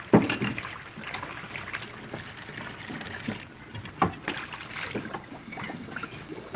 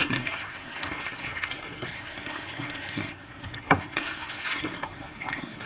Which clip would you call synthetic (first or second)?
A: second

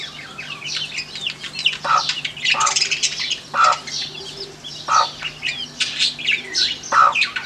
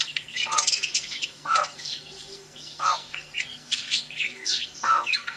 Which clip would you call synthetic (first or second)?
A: second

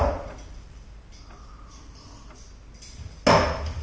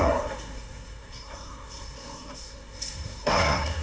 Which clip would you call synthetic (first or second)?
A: second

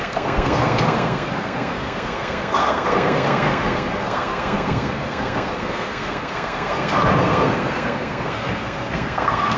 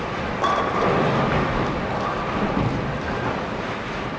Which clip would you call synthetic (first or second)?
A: first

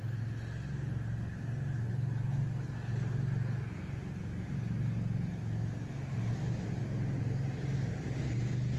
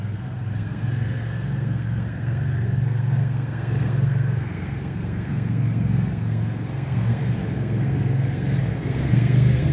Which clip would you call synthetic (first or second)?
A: second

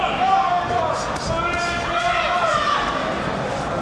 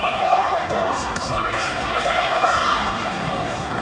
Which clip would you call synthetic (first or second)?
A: second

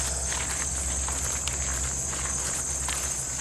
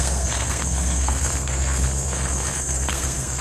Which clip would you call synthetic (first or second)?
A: second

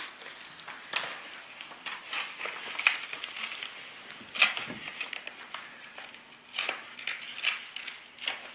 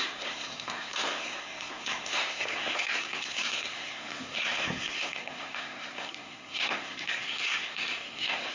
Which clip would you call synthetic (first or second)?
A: second